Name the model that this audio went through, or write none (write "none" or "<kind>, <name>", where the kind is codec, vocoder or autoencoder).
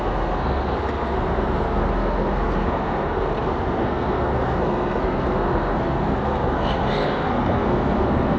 codec, SNAC